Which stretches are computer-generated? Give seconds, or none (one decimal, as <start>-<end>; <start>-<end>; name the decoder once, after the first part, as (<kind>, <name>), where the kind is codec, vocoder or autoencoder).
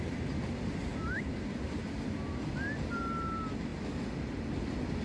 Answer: 0.9-1.4 (vocoder, BigVGAN v2); 1.8-3.0